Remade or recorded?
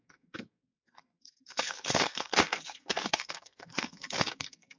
remade